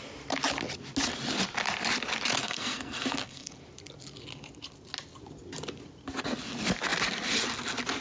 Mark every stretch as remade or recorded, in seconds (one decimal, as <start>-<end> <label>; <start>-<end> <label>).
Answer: 0.0-2.4 recorded; 2.4-3.5 remade; 3.5-8.0 recorded